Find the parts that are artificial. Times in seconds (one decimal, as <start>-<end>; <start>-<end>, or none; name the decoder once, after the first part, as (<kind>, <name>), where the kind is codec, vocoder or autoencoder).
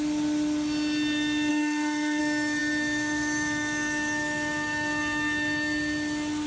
1.5-2.2 (codec, SNAC)